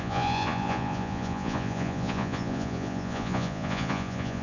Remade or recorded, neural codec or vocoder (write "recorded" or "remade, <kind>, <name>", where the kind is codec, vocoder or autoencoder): remade, vocoder, Vocos